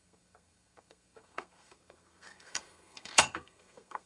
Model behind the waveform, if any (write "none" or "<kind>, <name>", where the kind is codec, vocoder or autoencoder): codec, SNAC